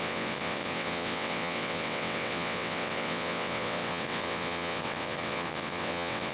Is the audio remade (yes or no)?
yes